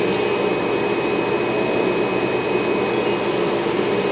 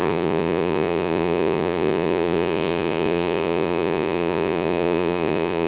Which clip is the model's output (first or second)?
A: second